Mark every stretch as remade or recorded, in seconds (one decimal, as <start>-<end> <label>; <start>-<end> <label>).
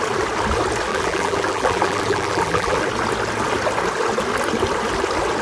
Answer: 0.0-0.9 recorded; 0.9-2.8 remade; 2.8-5.4 recorded